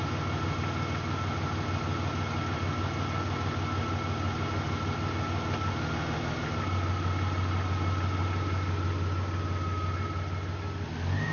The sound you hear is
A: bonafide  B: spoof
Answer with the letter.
A